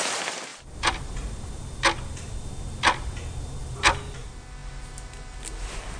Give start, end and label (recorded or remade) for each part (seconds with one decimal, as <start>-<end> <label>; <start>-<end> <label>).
0.0-6.0 recorded